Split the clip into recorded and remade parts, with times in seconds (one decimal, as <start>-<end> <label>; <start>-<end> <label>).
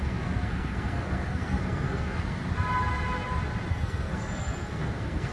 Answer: 0.0-2.4 remade; 2.4-3.7 recorded; 3.7-5.3 remade